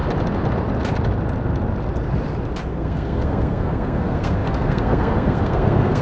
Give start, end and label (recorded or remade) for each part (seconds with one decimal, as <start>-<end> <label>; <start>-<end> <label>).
0.0-2.7 recorded; 2.7-6.0 remade